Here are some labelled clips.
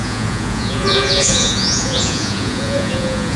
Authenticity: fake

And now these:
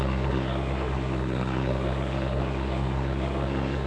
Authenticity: fake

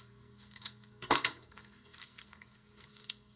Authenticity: fake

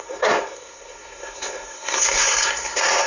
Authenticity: fake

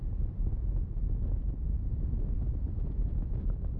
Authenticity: fake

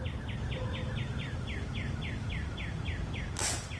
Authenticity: real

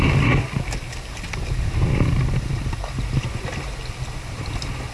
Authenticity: real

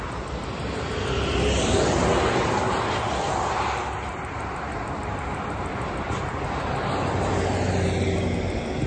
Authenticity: real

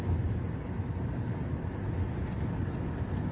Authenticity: real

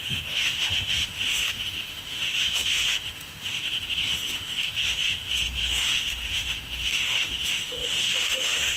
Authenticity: fake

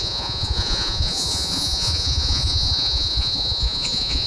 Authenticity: fake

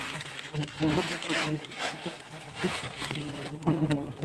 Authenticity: fake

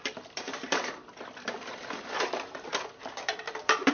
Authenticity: fake